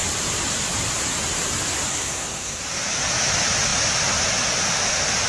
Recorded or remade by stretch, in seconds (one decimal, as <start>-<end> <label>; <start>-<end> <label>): 0.0-1.9 recorded; 1.9-2.6 remade; 2.6-5.3 recorded